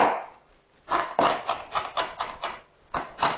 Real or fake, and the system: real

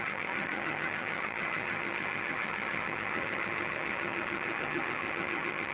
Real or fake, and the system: fake, vocoder, HiFi-GAN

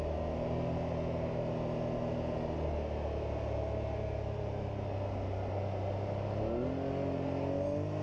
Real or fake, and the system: real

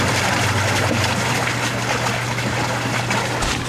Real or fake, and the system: real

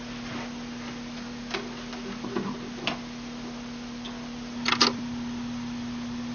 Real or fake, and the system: fake, vocoder, BigVGAN v2